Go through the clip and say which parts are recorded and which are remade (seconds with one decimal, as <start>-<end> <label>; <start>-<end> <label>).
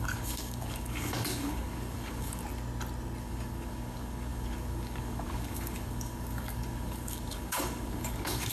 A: 0.0-2.4 remade; 2.4-3.2 recorded; 3.2-8.5 remade